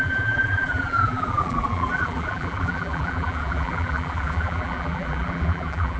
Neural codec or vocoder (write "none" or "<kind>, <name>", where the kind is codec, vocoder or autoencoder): vocoder, BigVGAN v2